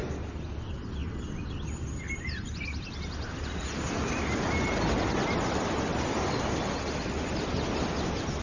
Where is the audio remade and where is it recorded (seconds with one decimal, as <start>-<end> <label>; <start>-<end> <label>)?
0.0-8.4 recorded